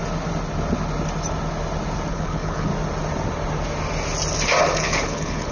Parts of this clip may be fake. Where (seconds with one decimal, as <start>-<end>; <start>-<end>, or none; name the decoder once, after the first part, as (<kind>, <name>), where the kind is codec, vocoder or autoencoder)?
2.1-2.7 (codec, HILCodec); 4.6-5.5